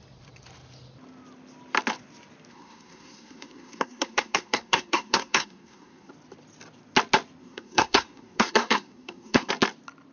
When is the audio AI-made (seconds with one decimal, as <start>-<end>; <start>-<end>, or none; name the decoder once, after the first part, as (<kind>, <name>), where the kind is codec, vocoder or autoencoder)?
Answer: 2.5-6.1 (codec, SNAC); 7.4-9.5